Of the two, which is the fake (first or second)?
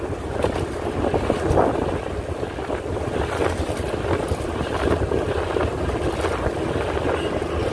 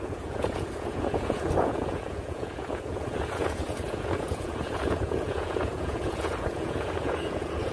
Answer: second